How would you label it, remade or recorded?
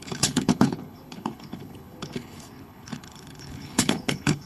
remade